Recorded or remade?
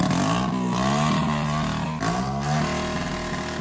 recorded